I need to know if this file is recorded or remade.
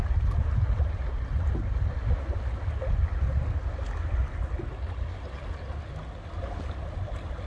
recorded